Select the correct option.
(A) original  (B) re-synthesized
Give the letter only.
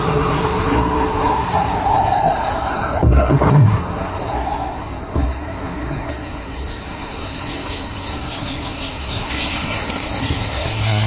B